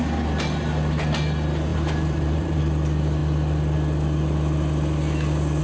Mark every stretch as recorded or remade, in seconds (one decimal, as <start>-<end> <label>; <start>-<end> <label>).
0.0-1.7 recorded; 1.7-2.6 remade; 2.6-5.6 recorded